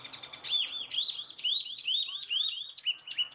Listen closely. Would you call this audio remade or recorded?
recorded